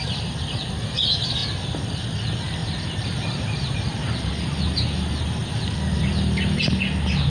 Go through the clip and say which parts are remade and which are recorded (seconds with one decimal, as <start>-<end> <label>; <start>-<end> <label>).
0.0-2.6 recorded; 2.6-4.3 remade; 4.3-7.3 recorded